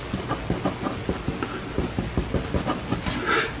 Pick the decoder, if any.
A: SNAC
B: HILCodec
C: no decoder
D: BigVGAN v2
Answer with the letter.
C